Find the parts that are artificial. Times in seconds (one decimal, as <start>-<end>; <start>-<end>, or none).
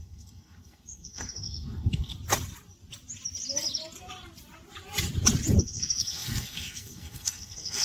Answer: 0.0-2.1; 5.6-7.8